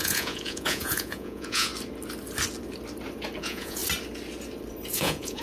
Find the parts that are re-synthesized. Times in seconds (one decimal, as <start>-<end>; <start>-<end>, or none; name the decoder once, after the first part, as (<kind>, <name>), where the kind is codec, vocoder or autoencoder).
0.0-1.7 (vocoder, Vocos); 3.4-3.8; 4.9-5.4